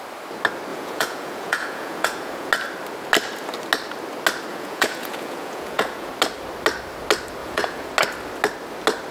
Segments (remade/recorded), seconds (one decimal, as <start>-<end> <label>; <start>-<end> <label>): 0.0-0.7 recorded; 0.7-2.5 remade; 2.5-4.5 recorded; 4.5-6.1 remade; 6.1-7.4 recorded; 7.4-7.9 remade; 7.9-9.1 recorded